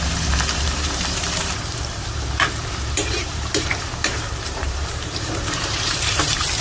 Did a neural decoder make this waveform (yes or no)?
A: yes